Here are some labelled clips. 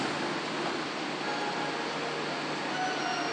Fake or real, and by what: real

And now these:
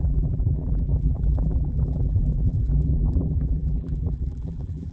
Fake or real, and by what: fake, vocoder, BigVGAN v2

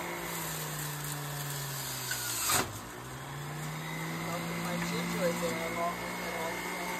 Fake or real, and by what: real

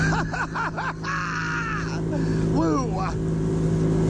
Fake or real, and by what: real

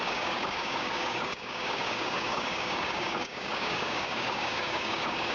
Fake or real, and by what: fake, codec, DAC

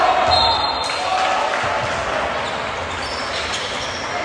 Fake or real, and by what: real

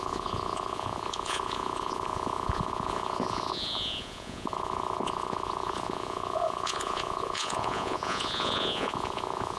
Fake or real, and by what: fake, vocoder, Vocos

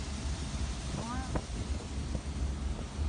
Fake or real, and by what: real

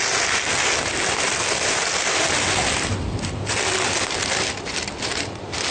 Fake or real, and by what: real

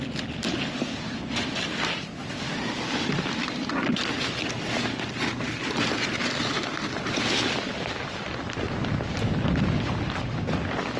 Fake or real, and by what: real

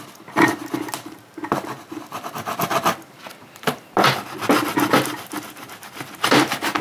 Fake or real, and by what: real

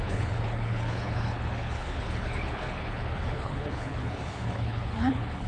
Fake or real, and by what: fake, codec, HILCodec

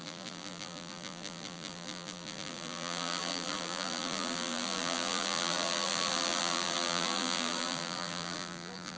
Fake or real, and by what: fake, vocoder, BigVGAN v2